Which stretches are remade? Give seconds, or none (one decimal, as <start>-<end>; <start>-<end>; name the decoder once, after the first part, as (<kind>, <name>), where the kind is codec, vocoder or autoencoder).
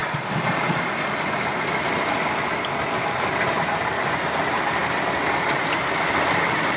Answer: none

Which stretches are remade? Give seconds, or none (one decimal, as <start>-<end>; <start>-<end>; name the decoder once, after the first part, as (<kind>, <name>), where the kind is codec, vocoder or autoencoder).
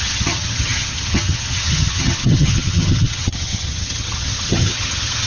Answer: 0.0-5.3 (vocoder, HiFi-GAN)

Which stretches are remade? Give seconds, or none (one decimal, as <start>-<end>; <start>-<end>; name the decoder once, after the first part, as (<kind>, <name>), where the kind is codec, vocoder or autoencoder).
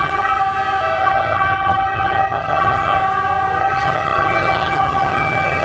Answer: 0.0-0.4 (vocoder, HiFi-GAN); 1.0-3.0; 3.6-5.6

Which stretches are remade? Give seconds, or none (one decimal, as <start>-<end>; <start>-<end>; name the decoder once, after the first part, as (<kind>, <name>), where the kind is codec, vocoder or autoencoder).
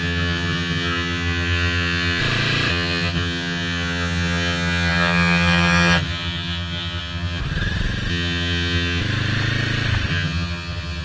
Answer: 0.0-2.2 (vocoder, HiFi-GAN); 2.7-7.4; 8.1-9.0; 10.1-11.0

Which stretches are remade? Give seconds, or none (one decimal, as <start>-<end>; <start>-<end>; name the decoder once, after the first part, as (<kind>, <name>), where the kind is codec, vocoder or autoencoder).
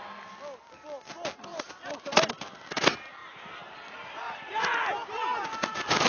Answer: none